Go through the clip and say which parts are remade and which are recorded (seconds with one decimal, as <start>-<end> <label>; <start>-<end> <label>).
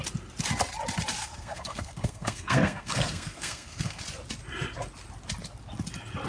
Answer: 0.0-1.2 recorded; 1.2-4.0 remade; 4.0-6.3 recorded